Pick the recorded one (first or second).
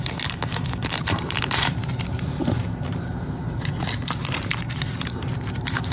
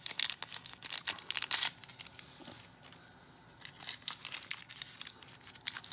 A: second